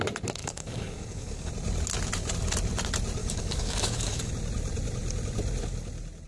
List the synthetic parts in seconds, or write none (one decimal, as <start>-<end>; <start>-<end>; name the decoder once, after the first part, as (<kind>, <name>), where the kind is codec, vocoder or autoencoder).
0.4-1.5 (codec, DAC); 3.2-4.3